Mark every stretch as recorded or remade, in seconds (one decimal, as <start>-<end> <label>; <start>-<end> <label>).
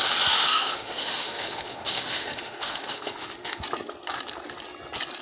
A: 0.0-0.5 recorded; 0.5-3.6 remade; 3.6-5.2 recorded